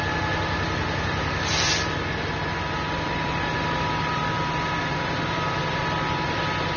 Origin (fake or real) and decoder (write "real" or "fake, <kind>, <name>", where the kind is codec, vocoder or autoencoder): real